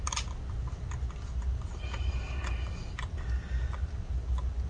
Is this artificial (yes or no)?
no